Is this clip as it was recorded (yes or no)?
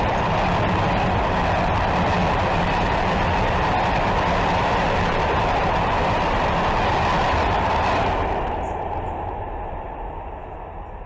yes